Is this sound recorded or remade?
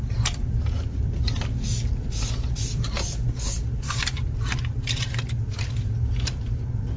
recorded